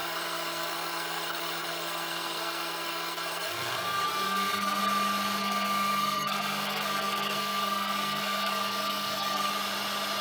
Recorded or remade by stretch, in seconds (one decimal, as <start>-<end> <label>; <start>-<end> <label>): 0.0-4.8 remade; 4.8-5.4 recorded; 5.4-9.5 remade; 9.5-10.2 recorded

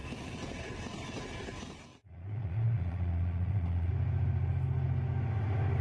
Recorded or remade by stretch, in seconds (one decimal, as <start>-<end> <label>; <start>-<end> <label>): 0.0-1.9 recorded; 1.9-3.9 remade; 3.9-5.8 recorded

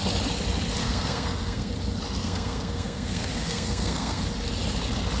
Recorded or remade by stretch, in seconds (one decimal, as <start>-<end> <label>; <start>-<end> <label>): 0.0-0.8 recorded; 0.8-1.7 remade; 1.7-2.2 recorded; 2.2-4.2 remade; 4.2-5.2 recorded

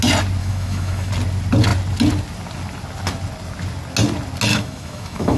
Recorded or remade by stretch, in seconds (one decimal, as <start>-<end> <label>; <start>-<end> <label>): 0.0-0.4 recorded; 0.4-1.1 remade; 1.1-4.5 recorded; 4.5-5.4 remade

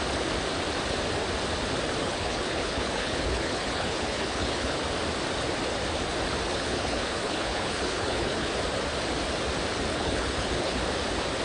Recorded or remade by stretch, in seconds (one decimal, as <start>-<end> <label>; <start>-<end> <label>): 0.0-2.0 recorded; 2.0-4.8 remade; 4.8-6.5 recorded; 6.5-8.5 remade; 8.5-9.9 recorded; 9.9-10.8 remade; 10.8-11.4 recorded